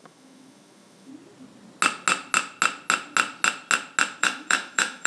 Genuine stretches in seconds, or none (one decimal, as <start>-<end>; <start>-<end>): 1.1-4.2